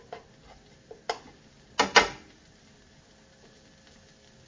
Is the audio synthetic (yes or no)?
no